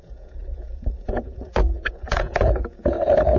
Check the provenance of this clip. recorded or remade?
remade